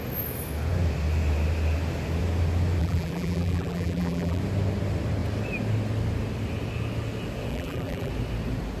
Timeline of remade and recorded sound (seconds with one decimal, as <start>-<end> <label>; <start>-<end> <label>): 0.0-2.8 recorded; 2.8-4.4 remade; 4.4-7.5 recorded; 7.5-8.1 remade; 8.1-8.8 recorded